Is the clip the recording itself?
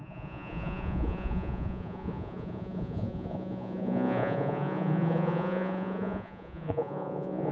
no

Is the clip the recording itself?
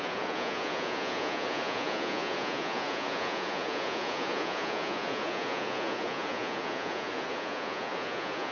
no